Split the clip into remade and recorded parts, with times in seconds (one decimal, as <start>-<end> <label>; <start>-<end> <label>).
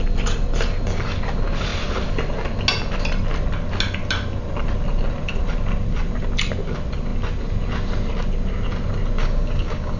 0.0-9.2 recorded; 9.2-10.0 remade